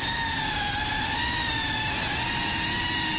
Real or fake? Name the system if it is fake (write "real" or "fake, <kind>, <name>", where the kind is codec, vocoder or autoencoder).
real